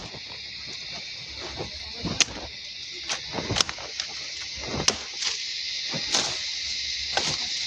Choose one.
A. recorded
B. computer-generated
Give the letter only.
A